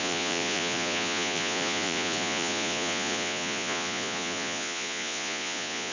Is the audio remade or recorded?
remade